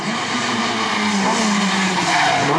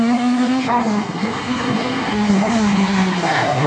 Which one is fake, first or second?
second